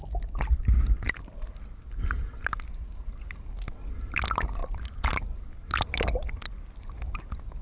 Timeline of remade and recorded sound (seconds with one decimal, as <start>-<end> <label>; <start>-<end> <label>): 0.0-7.6 recorded